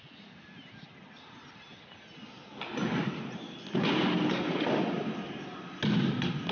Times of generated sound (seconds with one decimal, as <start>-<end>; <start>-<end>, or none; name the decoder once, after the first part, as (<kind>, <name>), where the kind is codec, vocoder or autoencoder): none